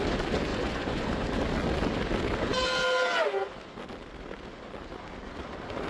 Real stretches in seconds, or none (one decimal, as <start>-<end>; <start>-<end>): 0.0-0.5; 1.1-5.9